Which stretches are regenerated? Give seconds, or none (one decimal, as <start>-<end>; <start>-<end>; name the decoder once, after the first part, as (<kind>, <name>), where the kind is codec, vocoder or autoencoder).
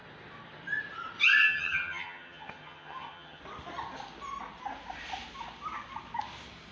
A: 1.4-3.4 (vocoder, HiFi-GAN)